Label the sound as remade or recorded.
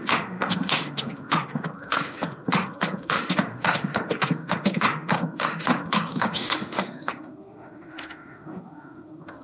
remade